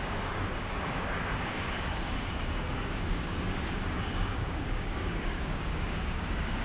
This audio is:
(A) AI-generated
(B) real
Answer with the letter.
A